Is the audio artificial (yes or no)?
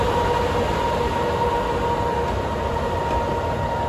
no